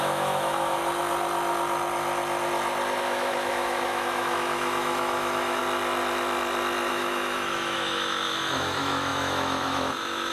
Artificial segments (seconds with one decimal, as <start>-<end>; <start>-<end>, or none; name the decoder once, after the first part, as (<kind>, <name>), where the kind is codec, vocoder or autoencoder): 0.0-0.8 (autoencoder, DAC-VAE); 3.0-5.6; 6.9-10.3